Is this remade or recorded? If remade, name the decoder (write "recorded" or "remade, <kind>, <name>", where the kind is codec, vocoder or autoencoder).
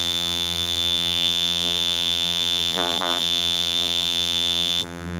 remade, vocoder, BigVGAN v2